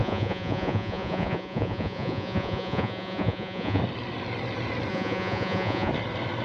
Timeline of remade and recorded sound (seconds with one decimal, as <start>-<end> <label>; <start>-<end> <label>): 0.0-3.8 remade; 3.8-4.9 recorded; 4.9-5.9 remade; 5.9-6.4 recorded